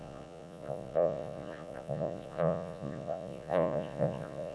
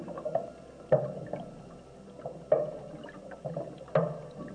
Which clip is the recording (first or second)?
second